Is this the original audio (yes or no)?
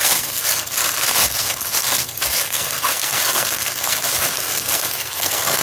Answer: no